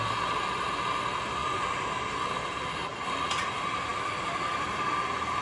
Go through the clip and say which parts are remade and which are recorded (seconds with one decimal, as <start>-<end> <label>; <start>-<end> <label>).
0.0-1.4 recorded; 1.4-2.1 remade; 2.1-3.9 recorded; 3.9-4.7 remade; 4.7-5.4 recorded